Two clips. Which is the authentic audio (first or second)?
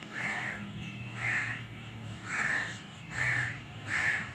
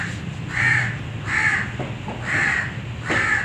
second